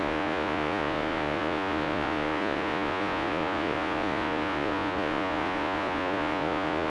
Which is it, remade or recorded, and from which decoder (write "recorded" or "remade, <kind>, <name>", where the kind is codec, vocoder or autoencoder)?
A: remade, vocoder, Vocos